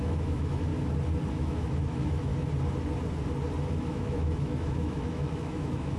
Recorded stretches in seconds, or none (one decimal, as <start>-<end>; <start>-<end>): 0.7-1.3; 2.3-3.8